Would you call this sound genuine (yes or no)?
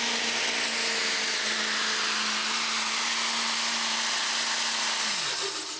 yes